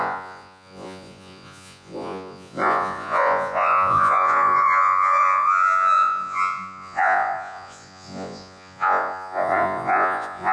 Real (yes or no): no